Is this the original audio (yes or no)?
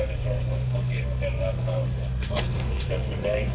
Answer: no